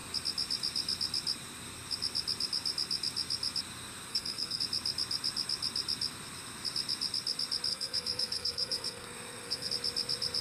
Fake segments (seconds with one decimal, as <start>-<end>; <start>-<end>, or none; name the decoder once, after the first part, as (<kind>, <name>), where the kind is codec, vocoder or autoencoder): 4.1-4.6 (codec, SNAC); 7.7-9.7